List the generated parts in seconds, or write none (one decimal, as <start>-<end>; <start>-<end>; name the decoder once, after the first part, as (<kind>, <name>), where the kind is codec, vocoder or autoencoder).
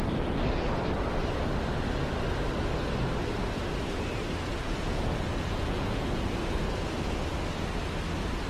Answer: 4.5-6.4 (vocoder, Vocos)